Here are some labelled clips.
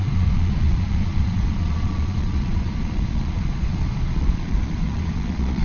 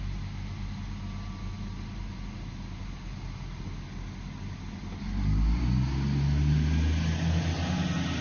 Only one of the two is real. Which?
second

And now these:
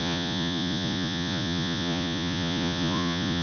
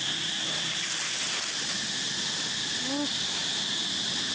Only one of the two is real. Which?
second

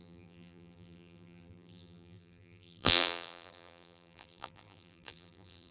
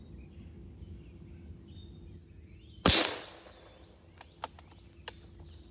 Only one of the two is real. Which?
second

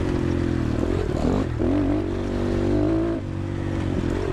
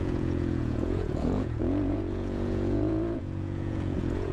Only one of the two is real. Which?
first